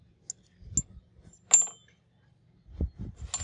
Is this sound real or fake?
real